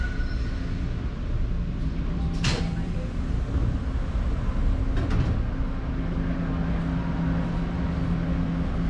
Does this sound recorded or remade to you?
recorded